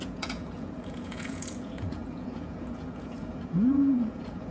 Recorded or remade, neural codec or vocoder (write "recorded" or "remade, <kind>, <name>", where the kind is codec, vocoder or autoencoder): remade, vocoder, Vocos